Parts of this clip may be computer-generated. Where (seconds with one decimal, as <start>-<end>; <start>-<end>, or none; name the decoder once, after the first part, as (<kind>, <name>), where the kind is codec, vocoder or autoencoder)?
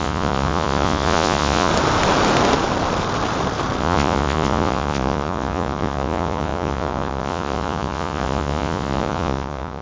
0.0-1.7 (vocoder, Vocos); 3.8-9.8